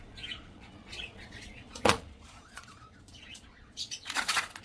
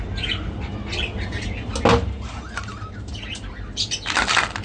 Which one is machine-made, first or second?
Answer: first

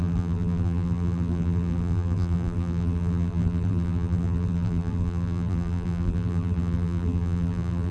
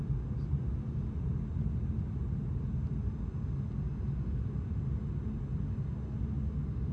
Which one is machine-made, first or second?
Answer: first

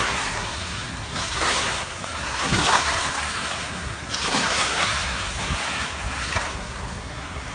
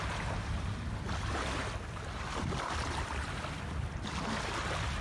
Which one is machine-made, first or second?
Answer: first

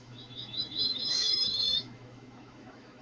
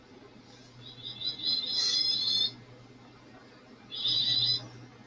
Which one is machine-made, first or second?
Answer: first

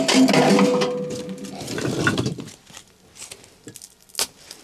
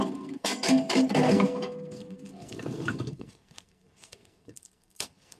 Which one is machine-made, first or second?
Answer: second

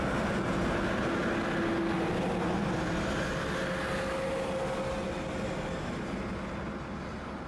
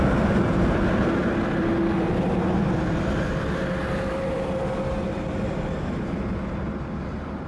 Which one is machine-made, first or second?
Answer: second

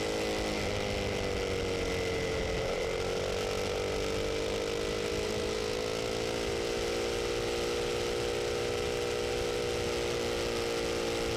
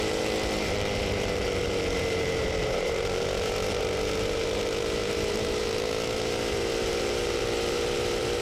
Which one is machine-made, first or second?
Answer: second